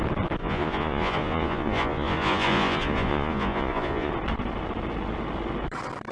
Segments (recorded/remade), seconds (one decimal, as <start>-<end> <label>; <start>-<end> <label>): 0.0-0.4 recorded; 0.4-4.1 remade; 4.1-6.1 recorded